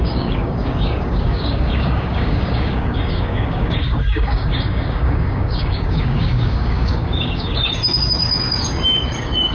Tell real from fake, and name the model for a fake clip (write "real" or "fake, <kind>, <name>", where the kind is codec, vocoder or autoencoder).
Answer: fake, codec, DAC